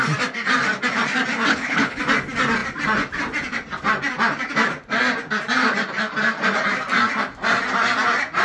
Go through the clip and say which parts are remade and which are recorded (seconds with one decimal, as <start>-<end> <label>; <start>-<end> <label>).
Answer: 0.0-1.5 recorded; 1.5-2.0 remade; 2.0-8.4 recorded

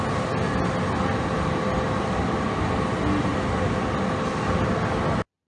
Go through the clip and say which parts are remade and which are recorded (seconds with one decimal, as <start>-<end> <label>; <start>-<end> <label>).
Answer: 0.0-5.5 recorded

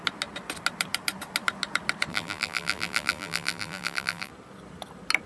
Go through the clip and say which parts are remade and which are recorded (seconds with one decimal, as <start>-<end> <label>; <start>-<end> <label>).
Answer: 0.0-2.1 recorded; 2.1-4.3 remade; 4.3-5.3 recorded

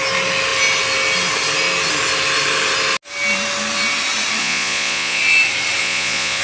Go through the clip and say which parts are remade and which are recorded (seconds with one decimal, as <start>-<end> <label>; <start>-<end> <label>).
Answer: 0.0-4.4 recorded; 4.4-5.2 remade; 5.2-5.8 recorded; 5.8-6.4 remade